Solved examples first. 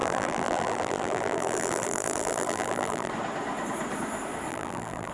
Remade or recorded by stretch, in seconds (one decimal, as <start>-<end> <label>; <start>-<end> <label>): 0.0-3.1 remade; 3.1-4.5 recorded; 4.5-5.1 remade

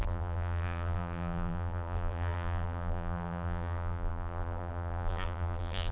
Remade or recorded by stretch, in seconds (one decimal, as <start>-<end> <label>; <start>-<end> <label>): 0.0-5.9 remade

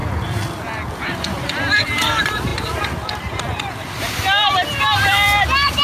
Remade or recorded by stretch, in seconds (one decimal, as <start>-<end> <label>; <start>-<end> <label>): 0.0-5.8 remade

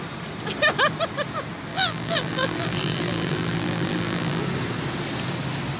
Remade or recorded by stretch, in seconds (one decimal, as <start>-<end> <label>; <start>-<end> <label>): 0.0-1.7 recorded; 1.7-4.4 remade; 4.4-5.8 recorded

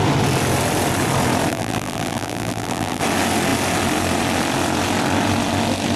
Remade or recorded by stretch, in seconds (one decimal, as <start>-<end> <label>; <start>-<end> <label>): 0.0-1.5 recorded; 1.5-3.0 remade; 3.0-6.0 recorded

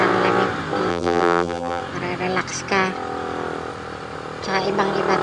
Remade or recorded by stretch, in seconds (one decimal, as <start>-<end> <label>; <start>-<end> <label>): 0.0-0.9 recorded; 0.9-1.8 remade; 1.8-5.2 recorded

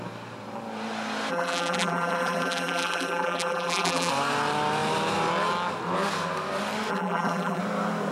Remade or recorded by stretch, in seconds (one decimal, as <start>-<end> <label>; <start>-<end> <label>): 0.0-1.3 recorded; 1.3-4.1 remade; 4.1-6.9 recorded; 6.9-7.6 remade; 7.6-8.1 recorded